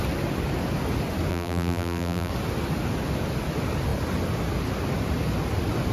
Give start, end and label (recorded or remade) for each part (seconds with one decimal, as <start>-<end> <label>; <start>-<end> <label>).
0.0-1.3 recorded; 1.3-2.3 remade; 2.3-5.9 recorded